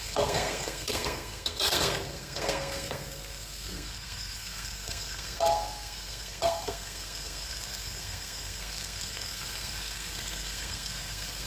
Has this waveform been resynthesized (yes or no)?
yes